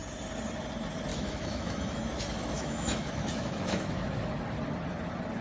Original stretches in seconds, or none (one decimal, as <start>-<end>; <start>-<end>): 0.0-1.1; 4.3-5.4